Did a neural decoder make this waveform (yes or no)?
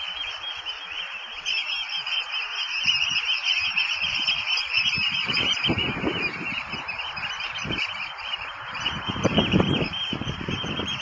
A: yes